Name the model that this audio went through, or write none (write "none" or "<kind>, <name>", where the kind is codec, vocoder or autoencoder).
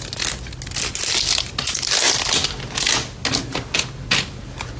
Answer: none